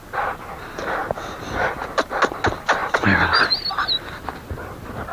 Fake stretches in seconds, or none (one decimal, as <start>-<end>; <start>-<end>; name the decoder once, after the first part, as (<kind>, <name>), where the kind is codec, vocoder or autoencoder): 1.0-2.2 (vocoder, BigVGAN v2)